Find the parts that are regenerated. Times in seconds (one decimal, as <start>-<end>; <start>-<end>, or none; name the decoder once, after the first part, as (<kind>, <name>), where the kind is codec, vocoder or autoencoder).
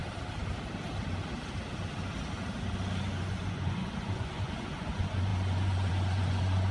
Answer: 3.0-6.7 (vocoder, Vocos)